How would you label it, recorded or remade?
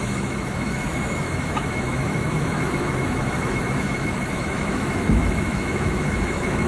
remade